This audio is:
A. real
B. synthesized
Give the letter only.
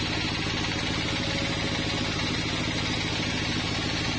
A